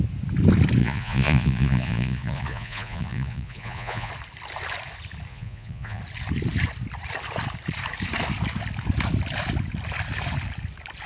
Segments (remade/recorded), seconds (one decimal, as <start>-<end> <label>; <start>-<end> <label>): 0.0-0.8 recorded; 0.8-4.1 remade; 4.1-5.3 recorded; 5.3-6.0 remade; 6.0-11.1 recorded